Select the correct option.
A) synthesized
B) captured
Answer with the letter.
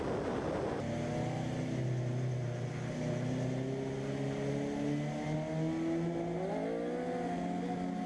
B